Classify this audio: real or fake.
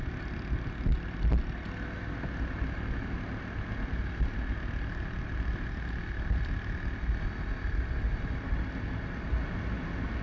real